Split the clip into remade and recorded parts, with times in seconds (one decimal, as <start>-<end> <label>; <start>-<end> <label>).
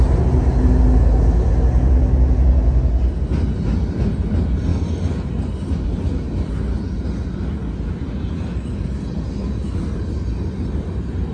0.0-11.3 recorded